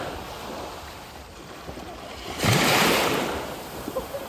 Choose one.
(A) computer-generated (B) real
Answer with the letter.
B